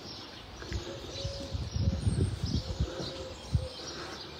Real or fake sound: real